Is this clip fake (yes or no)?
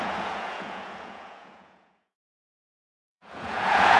yes